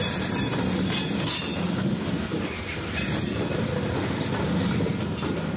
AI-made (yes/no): no